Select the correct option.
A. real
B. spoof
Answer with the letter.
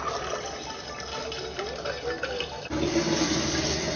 A